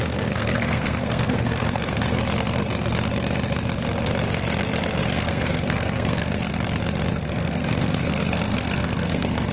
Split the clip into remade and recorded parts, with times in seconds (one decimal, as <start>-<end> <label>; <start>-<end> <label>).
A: 0.0-2.2 remade; 2.2-5.0 recorded; 5.0-6.5 remade; 6.5-7.1 recorded; 7.1-9.5 remade